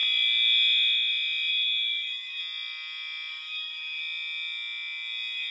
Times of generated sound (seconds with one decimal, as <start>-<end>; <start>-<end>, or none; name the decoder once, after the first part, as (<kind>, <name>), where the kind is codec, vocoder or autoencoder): 1.5-2.4 (autoencoder, DAC-VAE); 3.3-4.0